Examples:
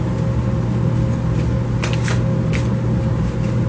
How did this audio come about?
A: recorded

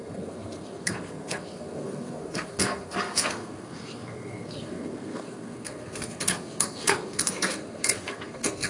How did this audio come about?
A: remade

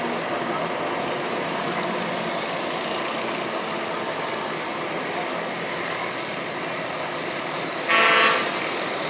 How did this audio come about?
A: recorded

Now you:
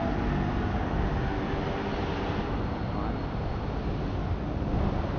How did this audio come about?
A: recorded